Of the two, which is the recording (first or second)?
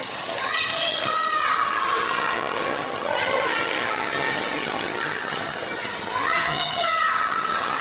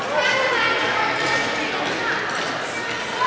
second